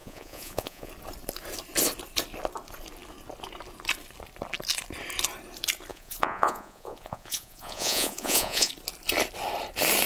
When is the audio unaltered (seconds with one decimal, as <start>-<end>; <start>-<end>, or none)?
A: 0.9-5.9; 8.7-10.1